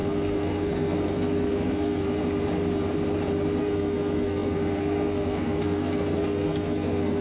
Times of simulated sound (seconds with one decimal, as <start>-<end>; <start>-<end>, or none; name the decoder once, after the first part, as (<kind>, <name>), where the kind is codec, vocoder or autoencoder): 0.0-2.2 (codec, SNAC); 3.6-7.2